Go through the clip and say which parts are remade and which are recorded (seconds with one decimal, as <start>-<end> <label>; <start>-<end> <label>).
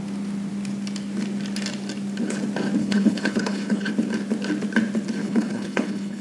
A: 0.0-2.8 recorded; 2.8-3.9 remade; 3.9-5.2 recorded; 5.2-6.2 remade